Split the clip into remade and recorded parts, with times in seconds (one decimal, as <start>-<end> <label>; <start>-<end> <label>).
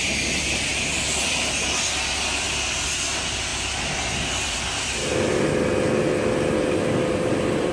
0.0-7.7 recorded